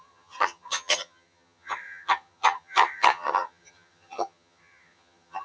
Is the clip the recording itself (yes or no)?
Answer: no